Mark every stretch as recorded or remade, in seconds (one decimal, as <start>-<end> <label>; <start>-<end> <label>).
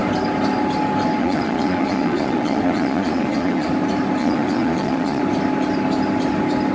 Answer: 0.0-1.2 recorded; 1.2-3.7 remade; 3.7-4.2 recorded; 4.2-5.2 remade; 5.2-6.7 recorded